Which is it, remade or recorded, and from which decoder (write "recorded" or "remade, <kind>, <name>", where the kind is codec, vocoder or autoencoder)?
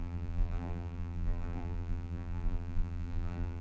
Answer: remade, vocoder, BigVGAN v2